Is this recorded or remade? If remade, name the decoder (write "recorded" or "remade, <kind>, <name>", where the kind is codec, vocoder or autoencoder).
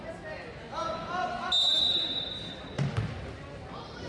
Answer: recorded